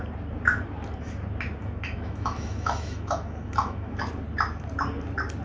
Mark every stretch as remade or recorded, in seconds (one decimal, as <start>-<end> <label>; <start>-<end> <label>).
0.0-1.6 recorded; 1.6-4.1 remade; 4.1-5.4 recorded